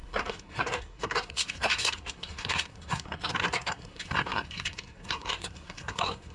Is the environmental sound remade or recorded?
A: remade